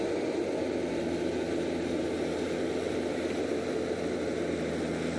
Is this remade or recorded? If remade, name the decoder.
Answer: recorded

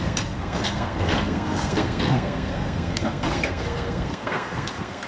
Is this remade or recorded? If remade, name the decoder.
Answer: remade, codec, SNAC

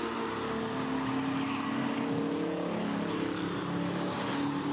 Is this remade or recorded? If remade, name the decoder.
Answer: recorded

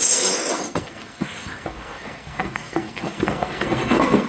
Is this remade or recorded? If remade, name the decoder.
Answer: remade, codec, SNAC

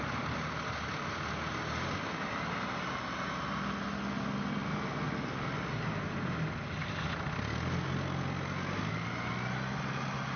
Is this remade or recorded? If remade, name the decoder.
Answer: recorded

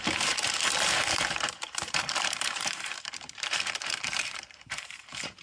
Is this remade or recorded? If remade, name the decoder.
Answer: remade, vocoder, BigVGAN v2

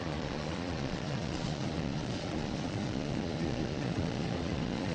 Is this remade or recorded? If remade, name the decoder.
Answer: remade, vocoder, Vocos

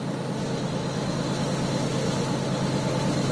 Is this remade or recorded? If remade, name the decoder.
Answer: recorded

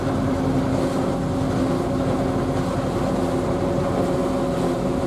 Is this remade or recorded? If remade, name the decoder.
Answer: recorded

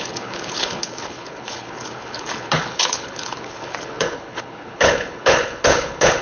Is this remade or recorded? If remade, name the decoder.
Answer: remade, codec, HILCodec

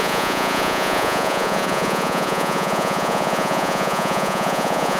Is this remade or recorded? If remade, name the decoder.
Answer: remade, vocoder, Vocos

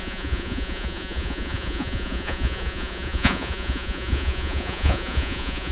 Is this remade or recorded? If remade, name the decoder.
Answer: remade, vocoder, Vocos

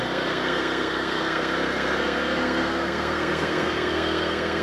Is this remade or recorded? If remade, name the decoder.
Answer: remade, codec, SNAC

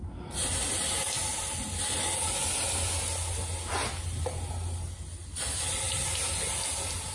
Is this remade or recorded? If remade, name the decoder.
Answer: recorded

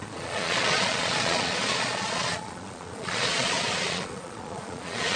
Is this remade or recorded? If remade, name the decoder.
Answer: remade, vocoder, Vocos